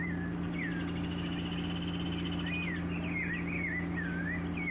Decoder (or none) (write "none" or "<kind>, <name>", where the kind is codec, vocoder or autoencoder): none